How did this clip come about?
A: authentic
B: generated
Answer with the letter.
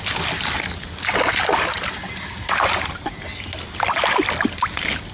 A